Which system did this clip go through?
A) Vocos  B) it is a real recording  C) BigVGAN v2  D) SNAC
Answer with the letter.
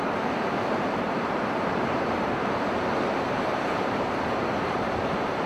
C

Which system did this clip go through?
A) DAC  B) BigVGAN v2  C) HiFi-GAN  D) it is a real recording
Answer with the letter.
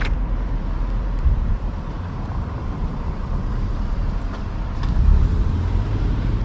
B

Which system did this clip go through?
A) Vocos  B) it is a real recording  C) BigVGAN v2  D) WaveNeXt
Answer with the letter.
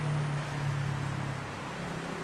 B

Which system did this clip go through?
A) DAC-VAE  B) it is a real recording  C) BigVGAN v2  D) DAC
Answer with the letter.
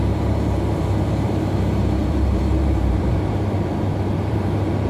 C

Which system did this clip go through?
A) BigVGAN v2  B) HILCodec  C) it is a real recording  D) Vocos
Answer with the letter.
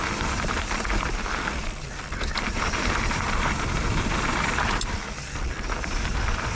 A